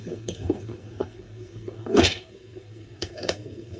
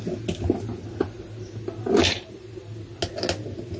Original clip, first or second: second